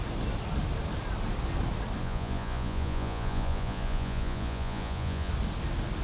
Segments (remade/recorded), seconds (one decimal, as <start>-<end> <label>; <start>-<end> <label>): 0.0-2.0 recorded; 2.0-5.3 remade; 5.3-6.0 recorded